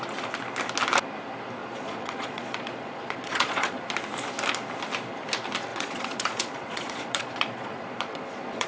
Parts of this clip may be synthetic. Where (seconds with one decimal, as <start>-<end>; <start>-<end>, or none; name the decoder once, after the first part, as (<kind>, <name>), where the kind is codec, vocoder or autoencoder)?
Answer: 1.6-3.9 (vocoder, Vocos); 5.7-8.7